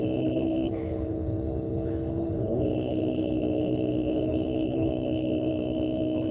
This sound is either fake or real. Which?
fake